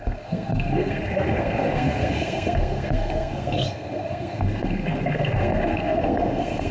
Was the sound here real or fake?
fake